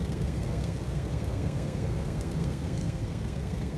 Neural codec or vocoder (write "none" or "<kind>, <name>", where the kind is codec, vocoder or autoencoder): codec, SNAC